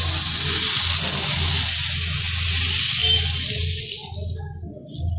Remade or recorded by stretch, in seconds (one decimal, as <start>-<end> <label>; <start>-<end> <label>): 0.0-5.2 recorded